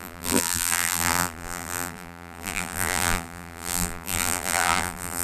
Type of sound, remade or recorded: remade